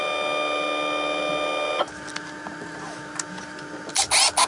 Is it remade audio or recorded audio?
recorded